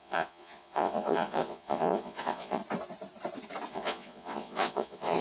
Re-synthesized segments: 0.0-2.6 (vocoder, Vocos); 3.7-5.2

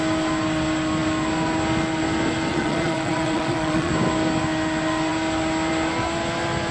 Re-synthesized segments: 2.5-3.9 (vocoder, Vocos)

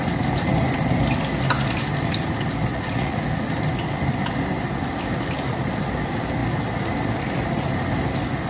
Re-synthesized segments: 2.7-3.2 (vocoder, Vocos)